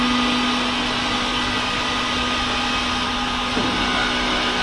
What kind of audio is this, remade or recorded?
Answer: recorded